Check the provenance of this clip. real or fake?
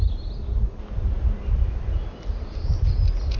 real